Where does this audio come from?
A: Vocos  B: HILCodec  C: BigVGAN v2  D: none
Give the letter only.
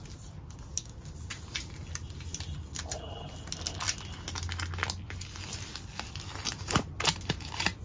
D